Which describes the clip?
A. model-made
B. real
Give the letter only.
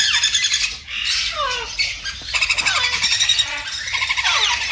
B